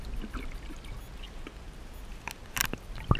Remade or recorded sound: recorded